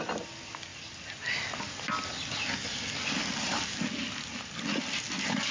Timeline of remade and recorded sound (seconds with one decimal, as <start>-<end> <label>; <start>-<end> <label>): 0.0-5.5 recorded